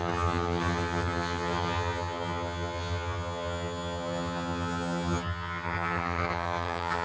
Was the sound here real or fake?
fake